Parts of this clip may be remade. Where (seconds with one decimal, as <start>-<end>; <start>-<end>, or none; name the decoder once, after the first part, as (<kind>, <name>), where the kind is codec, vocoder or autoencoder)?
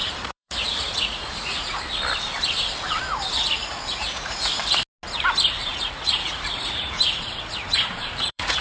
0.0-1.8 (vocoder, Vocos); 3.6-4.6; 5.6-8.6